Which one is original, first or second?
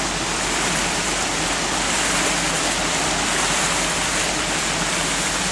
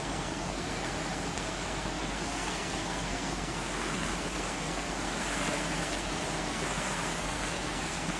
first